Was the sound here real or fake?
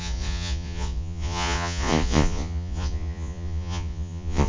fake